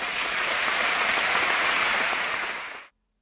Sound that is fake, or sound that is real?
fake